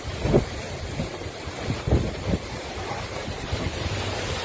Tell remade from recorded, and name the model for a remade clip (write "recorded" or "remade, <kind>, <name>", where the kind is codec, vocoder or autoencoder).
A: recorded